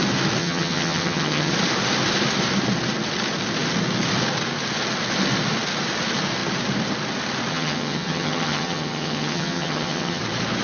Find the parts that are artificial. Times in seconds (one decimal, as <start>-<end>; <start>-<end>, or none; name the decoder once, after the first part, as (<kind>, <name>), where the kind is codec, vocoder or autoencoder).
0.4-1.5 (vocoder, HiFi-GAN); 7.5-10.2